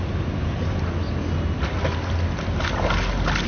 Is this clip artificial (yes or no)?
no